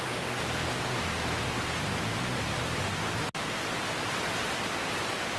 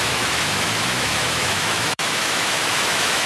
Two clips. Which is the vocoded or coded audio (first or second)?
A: second